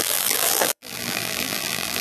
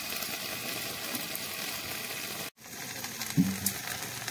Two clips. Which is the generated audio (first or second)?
first